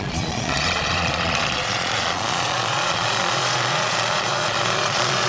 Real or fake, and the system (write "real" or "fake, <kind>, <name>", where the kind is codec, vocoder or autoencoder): fake, vocoder, Vocos